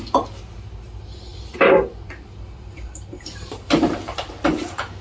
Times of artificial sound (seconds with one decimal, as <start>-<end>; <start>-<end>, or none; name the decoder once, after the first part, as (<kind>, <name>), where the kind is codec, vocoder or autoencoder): 1.3-4.3 (vocoder, BigVGAN v2)